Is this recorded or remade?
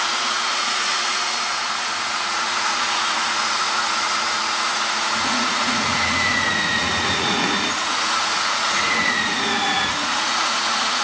remade